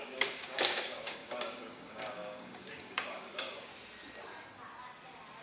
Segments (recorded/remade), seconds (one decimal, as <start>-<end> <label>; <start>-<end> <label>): 0.0-3.7 remade; 3.7-5.4 recorded